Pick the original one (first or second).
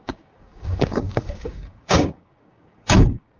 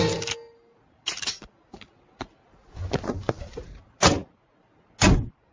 second